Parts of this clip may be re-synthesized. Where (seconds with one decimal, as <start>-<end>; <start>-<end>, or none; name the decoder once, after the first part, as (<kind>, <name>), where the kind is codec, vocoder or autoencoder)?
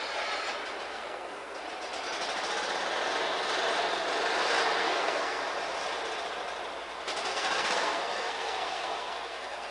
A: 0.9-1.6 (codec, SNAC); 4.8-5.4; 7.3-9.7